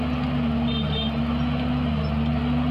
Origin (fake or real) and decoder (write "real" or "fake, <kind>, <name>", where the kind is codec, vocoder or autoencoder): real